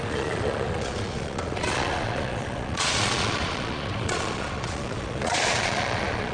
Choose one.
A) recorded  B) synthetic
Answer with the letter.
B